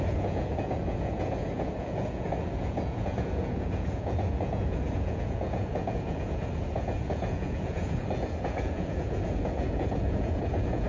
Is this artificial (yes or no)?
yes